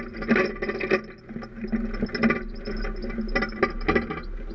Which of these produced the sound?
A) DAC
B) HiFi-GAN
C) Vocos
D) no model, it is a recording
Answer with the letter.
D